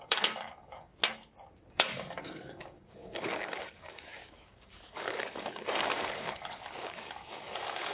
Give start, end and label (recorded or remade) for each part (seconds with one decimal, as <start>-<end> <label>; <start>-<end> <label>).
0.0-1.0 remade; 1.0-1.7 recorded; 1.7-7.9 remade